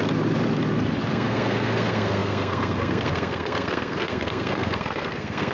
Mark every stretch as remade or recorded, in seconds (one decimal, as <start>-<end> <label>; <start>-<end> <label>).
0.0-1.1 recorded; 1.1-5.5 remade